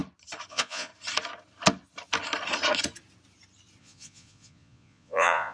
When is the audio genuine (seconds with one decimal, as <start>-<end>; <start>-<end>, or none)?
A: 0.0-0.5; 0.9-3.8